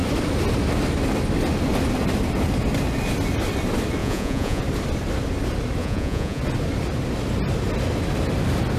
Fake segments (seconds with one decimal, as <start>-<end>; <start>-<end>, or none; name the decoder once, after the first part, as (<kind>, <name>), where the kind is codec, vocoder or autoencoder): 4.0-4.6 (vocoder, Vocos); 5.8-6.4